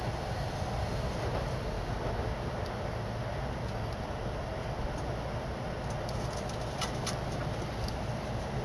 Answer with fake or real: real